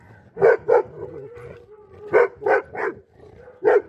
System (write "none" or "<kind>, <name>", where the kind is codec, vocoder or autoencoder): none